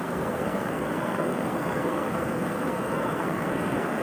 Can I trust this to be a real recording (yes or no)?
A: no